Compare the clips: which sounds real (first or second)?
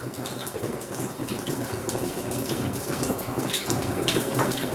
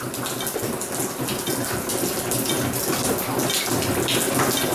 second